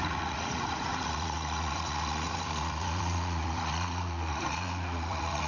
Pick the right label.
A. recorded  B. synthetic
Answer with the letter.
B